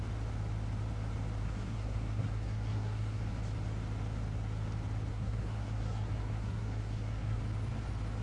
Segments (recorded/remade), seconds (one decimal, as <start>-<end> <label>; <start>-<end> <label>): 0.0-1.4 recorded; 1.4-3.2 remade; 3.2-5.1 recorded; 5.1-7.4 remade; 7.4-8.2 recorded